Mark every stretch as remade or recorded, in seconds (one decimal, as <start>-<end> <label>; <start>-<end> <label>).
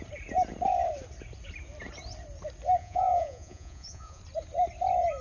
0.0-2.8 recorded; 2.8-4.2 remade; 4.2-5.2 recorded